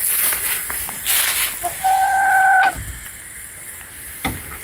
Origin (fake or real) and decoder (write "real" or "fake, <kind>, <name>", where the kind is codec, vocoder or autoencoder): real